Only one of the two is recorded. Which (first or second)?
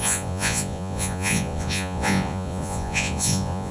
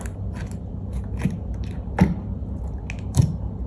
second